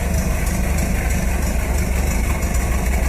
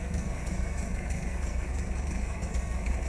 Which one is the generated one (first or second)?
second